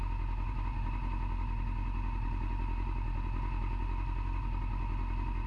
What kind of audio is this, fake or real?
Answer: real